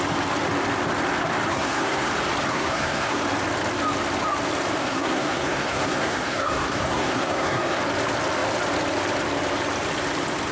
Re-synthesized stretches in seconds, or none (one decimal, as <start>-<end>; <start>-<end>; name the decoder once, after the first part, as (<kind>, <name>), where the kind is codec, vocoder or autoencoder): 1.5-2.1 (codec, SNAC); 2.5-3.2; 4.8-7.8

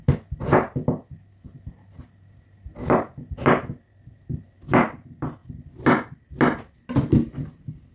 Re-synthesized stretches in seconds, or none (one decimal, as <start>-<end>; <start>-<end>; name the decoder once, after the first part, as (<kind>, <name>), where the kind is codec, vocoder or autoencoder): none

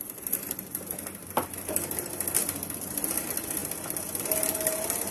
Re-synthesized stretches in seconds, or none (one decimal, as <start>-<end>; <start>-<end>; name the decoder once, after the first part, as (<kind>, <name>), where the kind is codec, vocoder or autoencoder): none

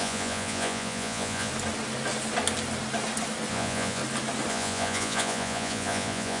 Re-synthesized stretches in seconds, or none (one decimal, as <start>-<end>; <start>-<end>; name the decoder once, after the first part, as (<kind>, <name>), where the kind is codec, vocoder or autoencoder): 0.0-1.5 (vocoder, Vocos); 3.5-4.0; 4.5-6.4

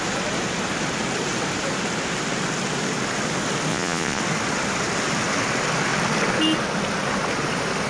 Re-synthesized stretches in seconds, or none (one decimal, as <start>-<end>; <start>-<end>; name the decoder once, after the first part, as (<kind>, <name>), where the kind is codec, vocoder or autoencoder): 3.7-4.2 (vocoder, Vocos)

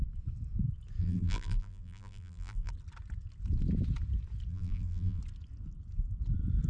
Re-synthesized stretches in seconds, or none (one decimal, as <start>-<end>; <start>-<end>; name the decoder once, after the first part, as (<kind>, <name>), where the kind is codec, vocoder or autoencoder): 1.0-2.7 (vocoder, BigVGAN v2); 4.5-5.2